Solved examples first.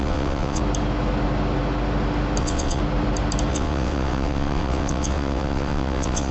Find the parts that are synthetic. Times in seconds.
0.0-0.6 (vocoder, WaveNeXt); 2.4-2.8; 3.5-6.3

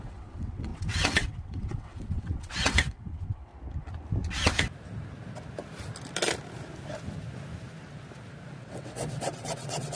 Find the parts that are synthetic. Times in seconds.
0.0-3.5 (vocoder, WaveNeXt); 8.6-10.0

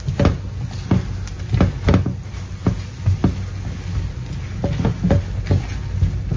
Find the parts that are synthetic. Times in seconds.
none